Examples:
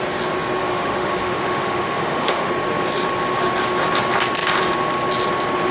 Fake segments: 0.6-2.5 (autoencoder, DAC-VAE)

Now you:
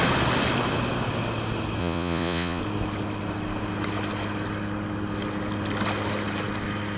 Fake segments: 1.8-2.6 (vocoder, Vocos)